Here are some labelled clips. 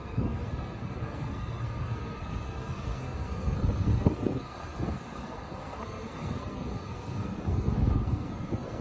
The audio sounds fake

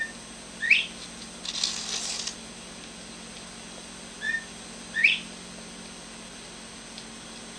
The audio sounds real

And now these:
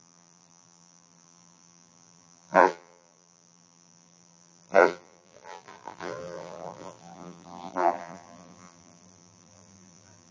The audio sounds fake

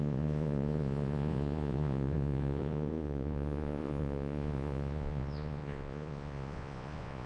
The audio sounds fake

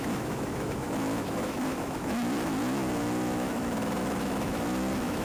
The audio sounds fake